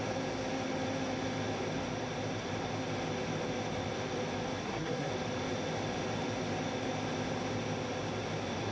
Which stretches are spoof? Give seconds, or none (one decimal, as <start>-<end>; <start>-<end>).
4.6-5.1